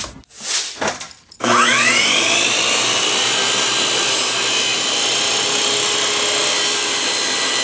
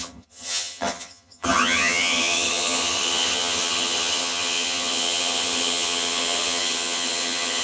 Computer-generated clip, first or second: second